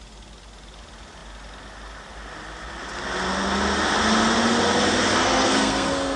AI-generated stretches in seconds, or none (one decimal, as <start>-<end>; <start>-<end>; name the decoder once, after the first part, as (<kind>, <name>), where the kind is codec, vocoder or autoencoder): 5.2-6.2 (codec, SNAC)